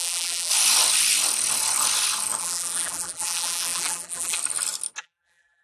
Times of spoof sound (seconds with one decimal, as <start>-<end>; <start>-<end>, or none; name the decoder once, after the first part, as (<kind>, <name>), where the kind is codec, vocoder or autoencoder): 0.0-0.5 (vocoder, BigVGAN v2); 2.4-4.4; 5.0-5.6